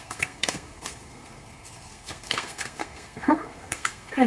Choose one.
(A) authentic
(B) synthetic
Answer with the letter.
B